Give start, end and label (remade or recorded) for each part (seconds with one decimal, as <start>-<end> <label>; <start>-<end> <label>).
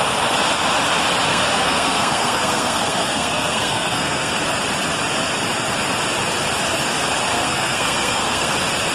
0.0-1.3 recorded; 1.3-4.4 remade; 4.4-7.3 recorded; 7.3-8.5 remade; 8.5-8.9 recorded